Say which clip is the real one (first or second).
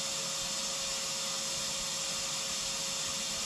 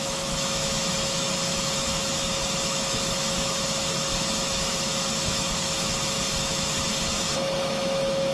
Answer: first